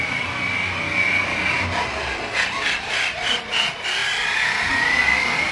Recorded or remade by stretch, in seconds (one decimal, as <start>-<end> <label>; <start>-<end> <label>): 0.0-5.5 recorded